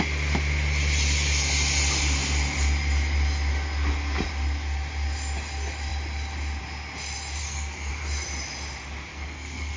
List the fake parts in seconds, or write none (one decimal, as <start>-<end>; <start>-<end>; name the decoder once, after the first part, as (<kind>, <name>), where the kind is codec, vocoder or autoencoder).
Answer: 7.4-7.9 (codec, SNAC); 9.1-9.8